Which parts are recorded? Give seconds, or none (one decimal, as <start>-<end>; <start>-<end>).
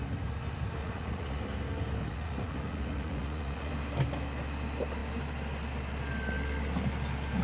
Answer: 0.0-0.8; 1.4-2.0; 3.7-7.4